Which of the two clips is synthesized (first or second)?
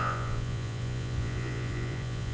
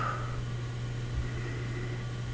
first